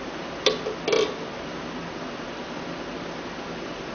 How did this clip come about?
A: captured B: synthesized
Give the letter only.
A